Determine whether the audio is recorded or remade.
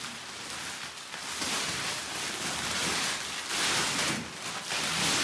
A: recorded